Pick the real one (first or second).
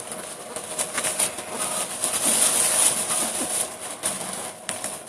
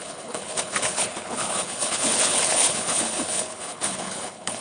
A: first